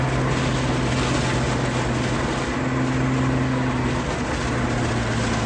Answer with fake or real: real